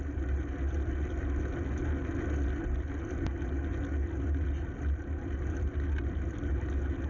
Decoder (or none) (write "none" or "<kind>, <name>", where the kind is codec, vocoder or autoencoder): none